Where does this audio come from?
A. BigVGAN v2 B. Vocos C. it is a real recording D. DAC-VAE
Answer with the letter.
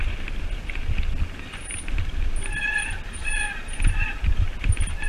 C